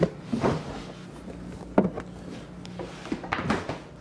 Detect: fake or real real